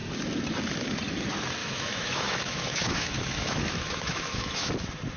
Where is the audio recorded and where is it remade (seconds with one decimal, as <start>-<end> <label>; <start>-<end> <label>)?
0.0-1.6 recorded; 1.6-4.7 remade; 4.7-5.2 recorded